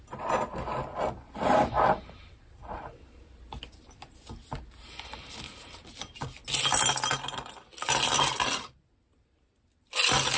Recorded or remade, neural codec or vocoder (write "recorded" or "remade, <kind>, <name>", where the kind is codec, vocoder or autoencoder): recorded